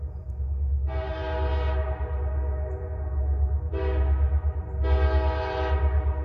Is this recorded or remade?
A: recorded